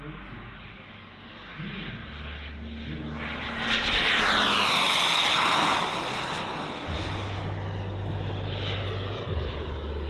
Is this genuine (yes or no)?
yes